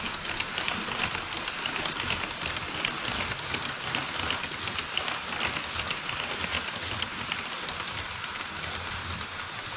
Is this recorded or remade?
recorded